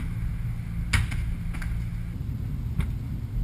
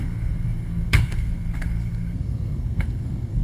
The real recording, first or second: first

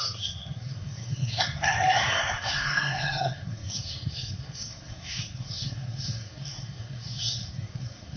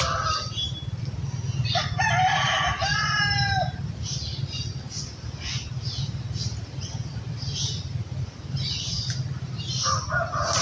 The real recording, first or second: second